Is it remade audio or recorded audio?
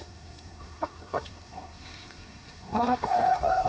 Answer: remade